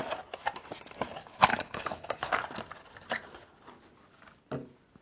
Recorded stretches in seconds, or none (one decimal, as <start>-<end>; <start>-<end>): 0.0-1.5; 2.2-5.0